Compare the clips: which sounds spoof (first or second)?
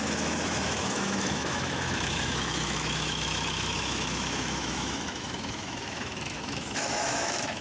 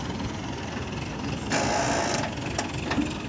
first